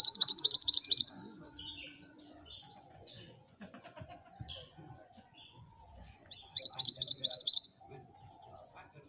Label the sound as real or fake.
fake